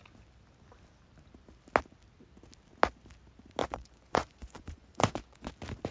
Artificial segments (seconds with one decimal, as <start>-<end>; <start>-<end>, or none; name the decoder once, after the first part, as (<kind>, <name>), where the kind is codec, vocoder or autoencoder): 3.6-5.5 (vocoder, Vocos)